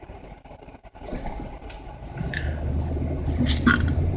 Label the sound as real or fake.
fake